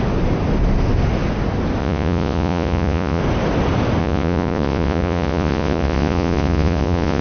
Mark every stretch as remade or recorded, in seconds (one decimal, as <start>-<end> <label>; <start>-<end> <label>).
0.0-1.8 recorded; 1.8-3.2 remade; 3.2-4.0 recorded; 4.0-7.2 remade

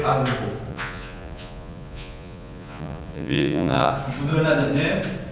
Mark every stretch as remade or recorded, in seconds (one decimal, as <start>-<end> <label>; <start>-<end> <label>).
0.0-0.7 recorded; 0.7-3.9 remade; 3.9-5.3 recorded

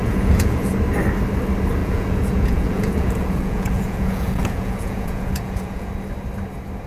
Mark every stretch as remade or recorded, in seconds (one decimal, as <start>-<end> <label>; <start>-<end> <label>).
0.0-0.7 remade; 0.7-1.8 recorded; 1.8-5.9 remade; 5.9-6.9 recorded

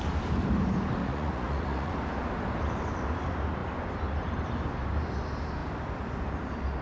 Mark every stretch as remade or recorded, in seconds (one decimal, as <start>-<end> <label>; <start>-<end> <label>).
0.0-1.0 recorded; 1.0-1.9 remade; 1.9-6.8 recorded